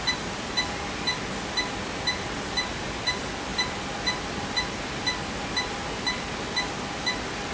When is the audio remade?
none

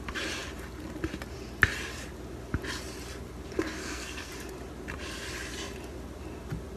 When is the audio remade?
3.8-4.3 (codec, SNAC)

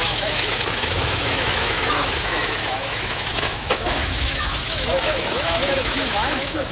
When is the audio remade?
0.0-6.7 (autoencoder, DAC-VAE)

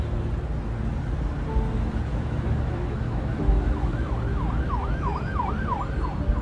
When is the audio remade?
2.1-4.1 (autoencoder, DAC-VAE); 4.8-5.4